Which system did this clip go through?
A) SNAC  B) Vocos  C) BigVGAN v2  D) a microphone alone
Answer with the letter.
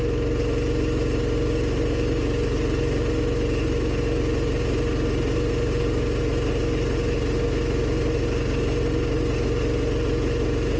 D